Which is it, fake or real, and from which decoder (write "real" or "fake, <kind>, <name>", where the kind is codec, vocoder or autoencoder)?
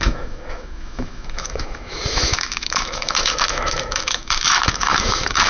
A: fake, autoencoder, DAC-VAE